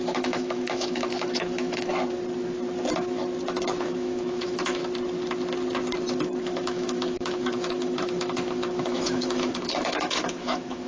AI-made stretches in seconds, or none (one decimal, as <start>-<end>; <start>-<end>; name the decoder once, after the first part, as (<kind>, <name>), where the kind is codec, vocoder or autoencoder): 0.0-1.9 (autoencoder, DAC-VAE); 3.8-4.8; 6.4-10.9